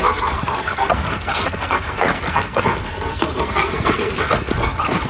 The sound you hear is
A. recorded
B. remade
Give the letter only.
B